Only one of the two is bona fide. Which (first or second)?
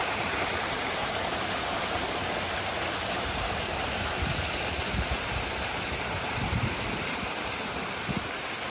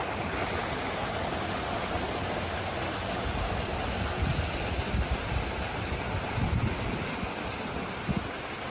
second